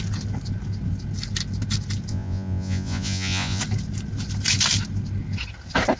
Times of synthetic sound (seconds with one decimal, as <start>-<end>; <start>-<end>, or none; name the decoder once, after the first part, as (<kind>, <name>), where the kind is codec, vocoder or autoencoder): 2.1-3.6 (vocoder, Vocos)